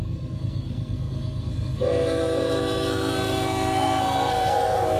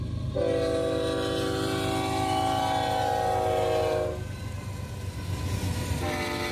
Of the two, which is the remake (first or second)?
first